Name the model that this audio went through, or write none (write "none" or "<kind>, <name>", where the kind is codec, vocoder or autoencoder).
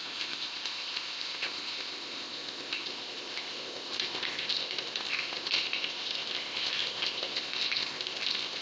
codec, ZipCodec